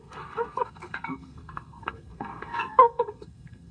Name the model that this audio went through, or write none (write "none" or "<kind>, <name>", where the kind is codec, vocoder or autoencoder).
codec, SNAC